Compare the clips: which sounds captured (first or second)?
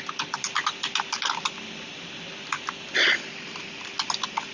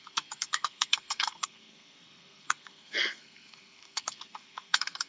first